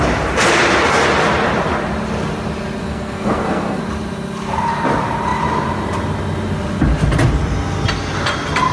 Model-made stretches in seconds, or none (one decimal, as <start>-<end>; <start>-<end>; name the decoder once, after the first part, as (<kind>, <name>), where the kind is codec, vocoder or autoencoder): 2.8-3.8 (codec, SNAC)